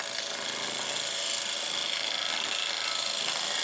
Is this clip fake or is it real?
real